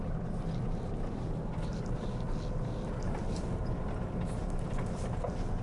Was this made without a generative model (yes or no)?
yes